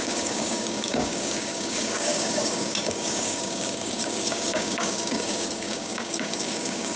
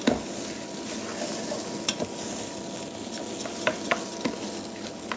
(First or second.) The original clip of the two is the second